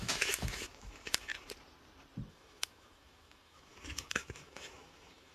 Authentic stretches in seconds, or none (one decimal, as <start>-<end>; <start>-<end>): 1.3-2.3